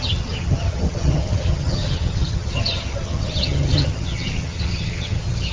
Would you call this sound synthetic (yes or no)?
yes